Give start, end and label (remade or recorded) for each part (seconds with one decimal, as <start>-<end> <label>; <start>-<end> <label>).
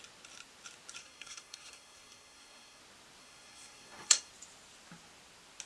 0.0-1.0 recorded; 1.0-2.8 remade; 2.8-3.2 recorded; 3.2-4.3 remade; 4.3-5.7 recorded